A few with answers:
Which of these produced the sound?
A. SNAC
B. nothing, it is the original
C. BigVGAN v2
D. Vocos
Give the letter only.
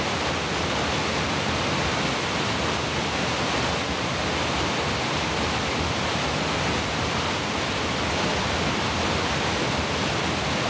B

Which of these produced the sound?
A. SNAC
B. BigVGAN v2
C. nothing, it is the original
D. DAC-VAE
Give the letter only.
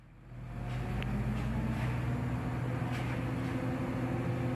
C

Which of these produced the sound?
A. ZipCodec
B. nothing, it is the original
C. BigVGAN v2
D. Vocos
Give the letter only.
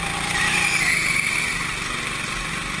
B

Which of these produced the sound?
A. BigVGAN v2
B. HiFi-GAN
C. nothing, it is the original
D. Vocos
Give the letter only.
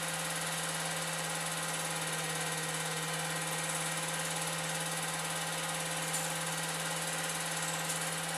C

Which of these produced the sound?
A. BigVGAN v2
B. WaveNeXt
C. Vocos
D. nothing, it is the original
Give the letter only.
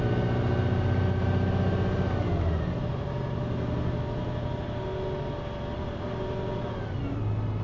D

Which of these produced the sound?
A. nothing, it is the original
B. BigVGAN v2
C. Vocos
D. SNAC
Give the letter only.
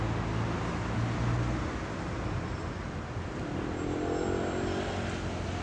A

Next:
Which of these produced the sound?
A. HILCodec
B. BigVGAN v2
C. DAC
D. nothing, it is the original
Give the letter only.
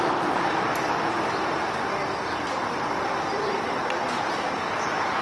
B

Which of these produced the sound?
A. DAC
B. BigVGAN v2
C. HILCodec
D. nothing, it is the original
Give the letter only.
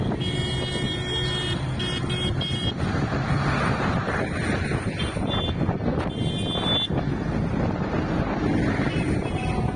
D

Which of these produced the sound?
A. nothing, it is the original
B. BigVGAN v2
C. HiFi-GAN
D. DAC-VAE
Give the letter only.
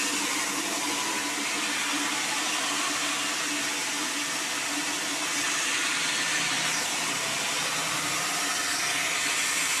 A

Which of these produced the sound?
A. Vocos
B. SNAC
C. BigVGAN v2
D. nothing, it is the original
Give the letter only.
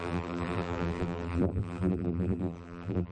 C